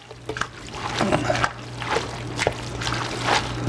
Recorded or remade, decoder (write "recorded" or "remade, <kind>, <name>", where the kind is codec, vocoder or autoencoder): recorded